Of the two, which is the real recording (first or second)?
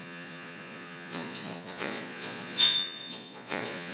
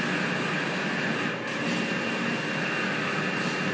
second